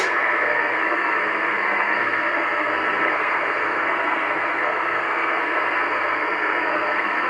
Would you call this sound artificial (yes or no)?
yes